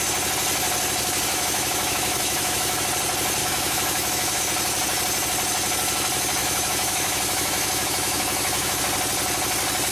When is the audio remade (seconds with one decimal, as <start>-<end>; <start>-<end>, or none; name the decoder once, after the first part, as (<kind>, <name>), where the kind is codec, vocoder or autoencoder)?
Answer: 1.3-2.8 (autoencoder, DAC-VAE); 3.4-4.4; 6.4-8.8